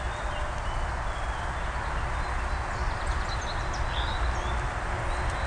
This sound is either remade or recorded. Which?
recorded